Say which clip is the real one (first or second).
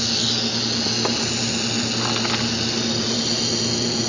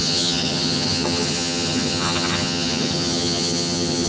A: first